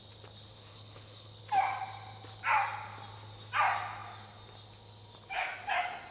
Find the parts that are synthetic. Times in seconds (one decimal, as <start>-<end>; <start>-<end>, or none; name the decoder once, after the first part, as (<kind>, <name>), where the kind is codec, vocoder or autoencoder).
0.7-1.4 (codec, HILCodec)